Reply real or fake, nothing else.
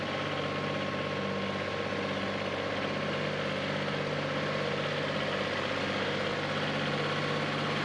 real